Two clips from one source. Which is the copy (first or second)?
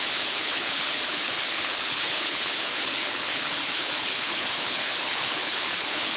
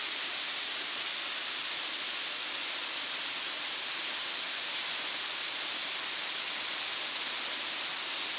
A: first